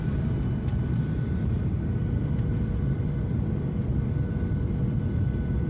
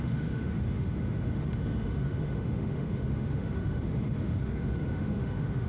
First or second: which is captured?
first